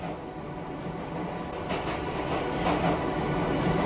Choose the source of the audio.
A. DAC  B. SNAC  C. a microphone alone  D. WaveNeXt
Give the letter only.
C